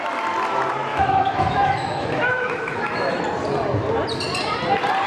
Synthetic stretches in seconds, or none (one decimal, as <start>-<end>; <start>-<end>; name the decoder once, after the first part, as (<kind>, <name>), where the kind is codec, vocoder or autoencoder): 0.9-3.2 (autoencoder, DAC-VAE)